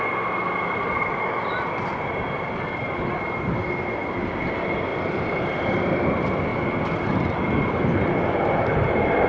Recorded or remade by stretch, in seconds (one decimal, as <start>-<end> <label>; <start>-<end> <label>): 0.0-4.9 recorded; 4.9-5.8 remade; 5.8-9.3 recorded